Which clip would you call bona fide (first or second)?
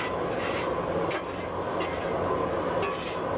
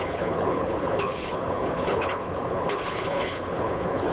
first